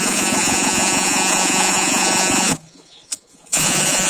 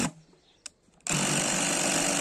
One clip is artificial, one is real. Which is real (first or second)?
second